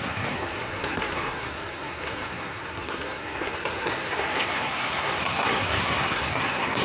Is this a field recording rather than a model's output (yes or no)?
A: no